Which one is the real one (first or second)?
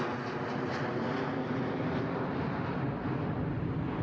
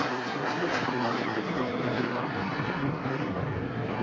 first